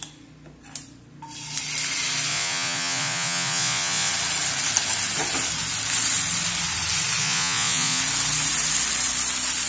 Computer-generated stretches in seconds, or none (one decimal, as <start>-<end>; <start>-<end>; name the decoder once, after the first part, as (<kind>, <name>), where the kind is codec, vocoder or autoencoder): 2.3-4.1 (vocoder, Vocos); 7.2-8.0